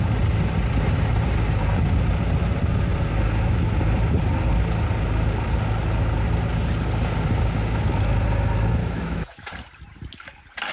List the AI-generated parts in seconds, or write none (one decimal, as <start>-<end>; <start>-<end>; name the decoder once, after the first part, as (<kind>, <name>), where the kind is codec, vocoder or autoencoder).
8.8-9.5 (autoencoder, DAC-VAE)